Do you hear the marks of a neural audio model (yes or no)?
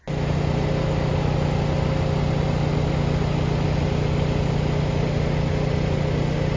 no